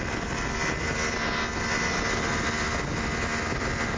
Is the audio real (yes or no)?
yes